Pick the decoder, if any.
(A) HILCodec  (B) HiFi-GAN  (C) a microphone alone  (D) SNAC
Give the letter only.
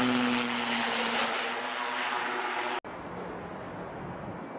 C